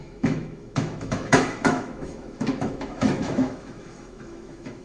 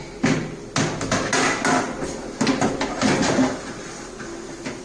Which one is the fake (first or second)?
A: first